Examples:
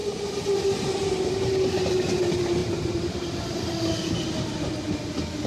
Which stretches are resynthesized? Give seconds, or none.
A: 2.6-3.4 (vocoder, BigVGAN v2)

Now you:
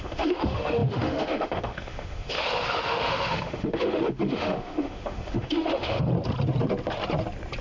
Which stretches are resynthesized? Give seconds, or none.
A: 0.0-6.1 (autoencoder, DAC-VAE)

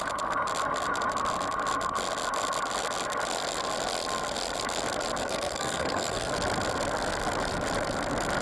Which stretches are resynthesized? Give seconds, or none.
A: 5.2-6.3 (codec, SNAC)

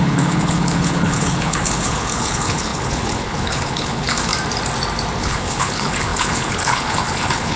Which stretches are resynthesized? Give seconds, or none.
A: 0.0-4.3 (codec, HILCodec); 5.2-7.6